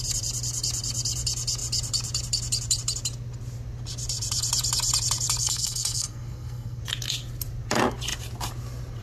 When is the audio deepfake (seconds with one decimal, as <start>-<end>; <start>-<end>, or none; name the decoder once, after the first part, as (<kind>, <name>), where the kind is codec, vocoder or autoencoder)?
5.4-6.8 (codec, SNAC)